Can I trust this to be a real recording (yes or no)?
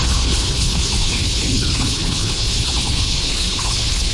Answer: no